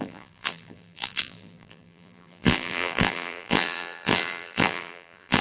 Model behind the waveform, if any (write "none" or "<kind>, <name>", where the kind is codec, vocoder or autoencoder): vocoder, BigVGAN v2